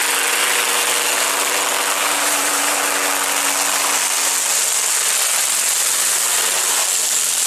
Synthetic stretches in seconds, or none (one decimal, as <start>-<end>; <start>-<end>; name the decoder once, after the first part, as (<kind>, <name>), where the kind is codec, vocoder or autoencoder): 2.0-2.8 (vocoder, BigVGAN v2)